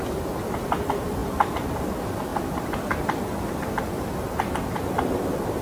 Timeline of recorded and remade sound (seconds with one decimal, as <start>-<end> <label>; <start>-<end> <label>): 0.0-5.6 recorded